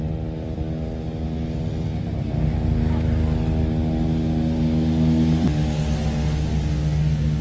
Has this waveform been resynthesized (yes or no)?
no